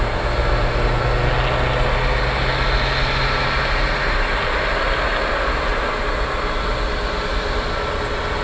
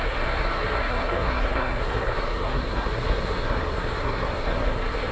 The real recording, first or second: first